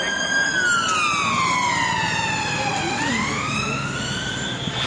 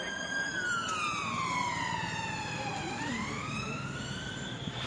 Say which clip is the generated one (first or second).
second